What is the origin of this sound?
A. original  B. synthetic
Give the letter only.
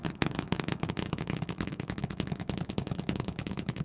B